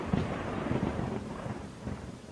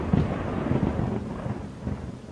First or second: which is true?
second